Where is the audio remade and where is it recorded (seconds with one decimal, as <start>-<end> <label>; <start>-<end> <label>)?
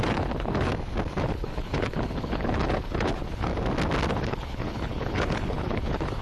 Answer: 0.0-0.7 remade; 0.7-1.2 recorded; 1.2-3.5 remade; 3.5-4.1 recorded; 4.1-6.2 remade